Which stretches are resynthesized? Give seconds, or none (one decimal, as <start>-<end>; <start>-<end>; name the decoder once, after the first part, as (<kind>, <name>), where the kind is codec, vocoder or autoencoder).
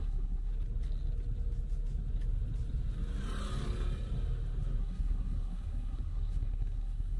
0.0-0.5 (codec, SNAC); 4.8-7.2